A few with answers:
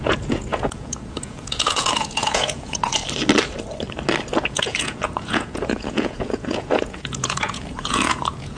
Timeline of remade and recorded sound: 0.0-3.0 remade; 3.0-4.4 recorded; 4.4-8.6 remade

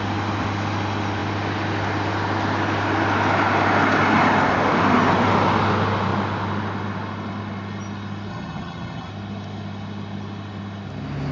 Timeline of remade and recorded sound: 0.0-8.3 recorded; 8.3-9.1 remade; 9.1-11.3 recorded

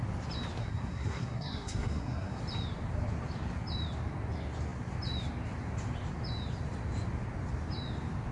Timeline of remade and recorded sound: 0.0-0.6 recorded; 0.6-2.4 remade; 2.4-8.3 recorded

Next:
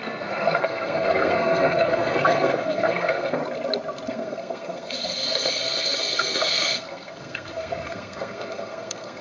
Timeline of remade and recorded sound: 0.0-3.4 remade; 3.4-4.1 recorded; 4.1-9.2 remade

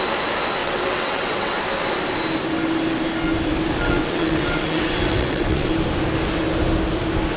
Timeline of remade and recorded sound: 0.0-0.6 recorded; 0.6-1.6 remade; 1.6-3.8 recorded; 3.8-5.7 remade; 5.7-7.4 recorded

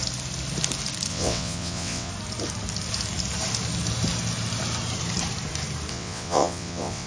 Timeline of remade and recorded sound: 0.0-1.1 recorded; 1.1-2.1 remade; 2.1-5.9 recorded; 5.9-7.1 remade

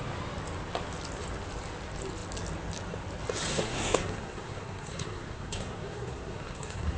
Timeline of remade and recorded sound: 0.0-3.5 recorded; 3.5-7.0 remade